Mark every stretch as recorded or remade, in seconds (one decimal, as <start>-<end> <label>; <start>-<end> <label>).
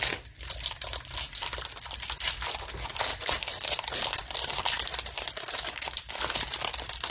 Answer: 0.0-3.1 recorded; 3.1-7.1 remade